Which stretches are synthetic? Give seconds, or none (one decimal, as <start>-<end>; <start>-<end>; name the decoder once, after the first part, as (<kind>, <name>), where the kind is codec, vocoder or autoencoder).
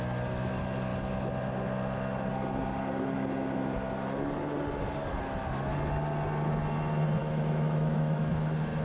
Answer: 7.2-8.3 (autoencoder, DAC-VAE)